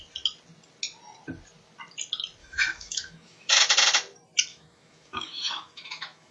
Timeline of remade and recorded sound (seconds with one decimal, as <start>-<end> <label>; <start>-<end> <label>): 0.0-2.4 recorded; 2.4-3.7 remade; 3.7-4.5 recorded; 4.5-6.3 remade